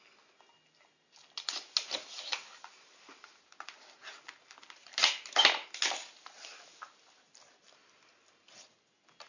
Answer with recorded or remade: recorded